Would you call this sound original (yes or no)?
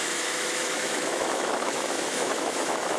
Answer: no